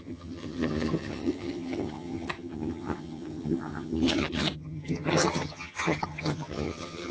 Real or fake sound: fake